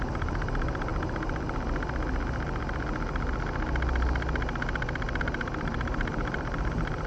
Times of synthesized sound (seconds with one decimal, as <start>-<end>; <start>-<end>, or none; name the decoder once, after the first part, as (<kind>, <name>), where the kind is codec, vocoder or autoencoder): 0.0-0.9 (vocoder, BigVGAN v2); 5.2-7.1